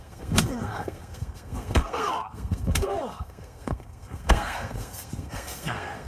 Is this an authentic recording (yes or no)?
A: no